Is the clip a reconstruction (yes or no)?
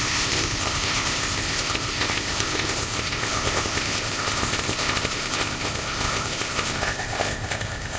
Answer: yes